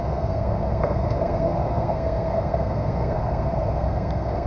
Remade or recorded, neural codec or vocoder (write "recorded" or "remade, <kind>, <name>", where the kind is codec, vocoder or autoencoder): remade, codec, SNAC